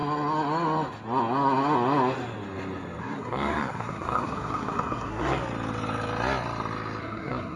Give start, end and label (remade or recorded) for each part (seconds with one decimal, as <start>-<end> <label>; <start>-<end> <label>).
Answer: 0.0-3.0 recorded; 3.0-5.4 remade; 5.4-7.0 recorded; 7.0-7.6 remade